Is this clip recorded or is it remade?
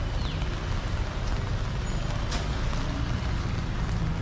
recorded